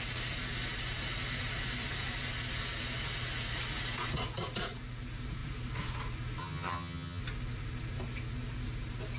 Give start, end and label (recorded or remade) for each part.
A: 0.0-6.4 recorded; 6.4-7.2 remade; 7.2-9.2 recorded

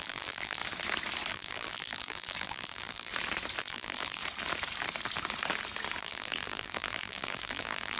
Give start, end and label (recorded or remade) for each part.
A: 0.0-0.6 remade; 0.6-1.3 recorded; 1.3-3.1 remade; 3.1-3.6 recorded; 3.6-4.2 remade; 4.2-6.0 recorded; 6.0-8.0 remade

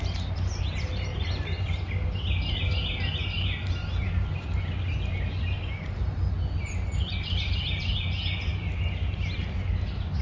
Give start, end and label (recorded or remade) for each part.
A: 0.0-10.2 recorded

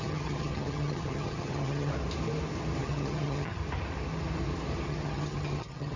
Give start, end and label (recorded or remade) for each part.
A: 0.0-1.9 remade; 1.9-2.8 recorded; 2.8-3.6 remade; 3.6-4.9 recorded; 4.9-6.0 remade